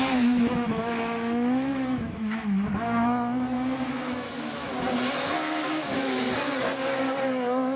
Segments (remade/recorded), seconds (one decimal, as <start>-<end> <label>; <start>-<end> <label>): 0.0-4.7 remade; 4.7-5.4 recorded; 5.4-6.2 remade; 6.2-7.8 recorded